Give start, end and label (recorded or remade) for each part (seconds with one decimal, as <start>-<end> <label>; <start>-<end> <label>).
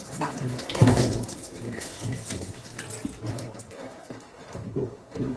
0.0-2.8 remade; 2.8-3.3 recorded; 3.3-5.4 remade